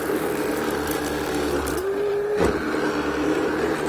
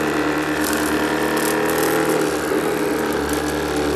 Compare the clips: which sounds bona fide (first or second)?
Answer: second